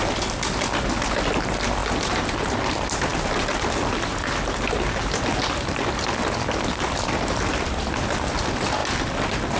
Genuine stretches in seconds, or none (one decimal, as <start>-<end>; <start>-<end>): 0.0-9.6